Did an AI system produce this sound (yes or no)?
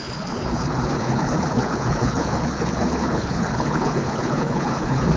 yes